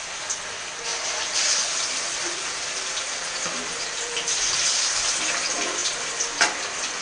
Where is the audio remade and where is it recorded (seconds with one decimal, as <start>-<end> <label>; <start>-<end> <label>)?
0.0-0.9 recorded; 0.9-5.0 remade; 5.0-7.0 recorded